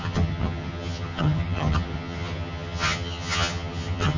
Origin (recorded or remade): remade